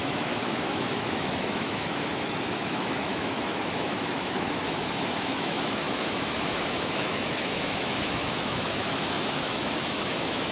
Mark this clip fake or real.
fake